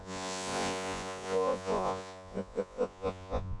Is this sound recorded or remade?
remade